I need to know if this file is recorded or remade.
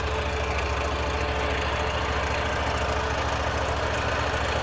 recorded